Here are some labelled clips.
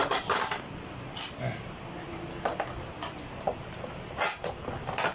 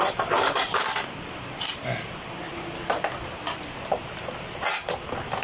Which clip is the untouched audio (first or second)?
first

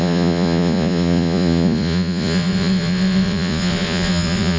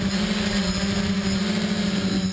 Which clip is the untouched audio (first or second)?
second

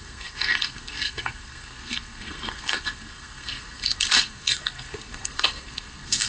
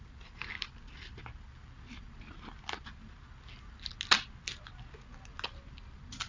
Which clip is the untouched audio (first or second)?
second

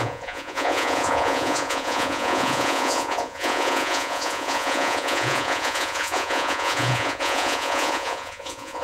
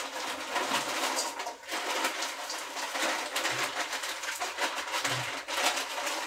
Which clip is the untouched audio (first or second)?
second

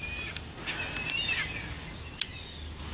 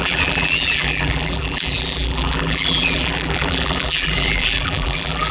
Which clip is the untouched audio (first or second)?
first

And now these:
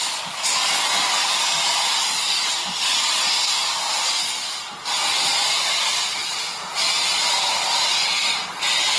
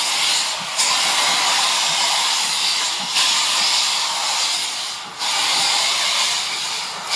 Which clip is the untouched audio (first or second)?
first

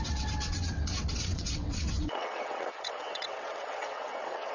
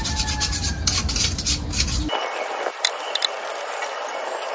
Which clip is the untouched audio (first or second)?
second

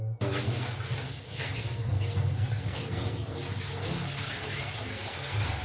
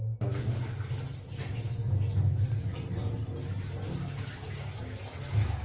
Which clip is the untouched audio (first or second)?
second